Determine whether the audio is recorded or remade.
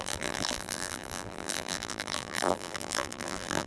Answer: remade